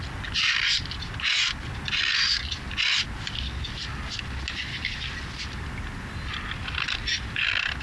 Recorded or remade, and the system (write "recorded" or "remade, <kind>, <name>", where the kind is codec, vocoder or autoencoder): recorded